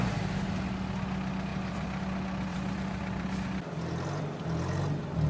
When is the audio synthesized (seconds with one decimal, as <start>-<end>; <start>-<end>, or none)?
1.5-2.0; 2.5-4.4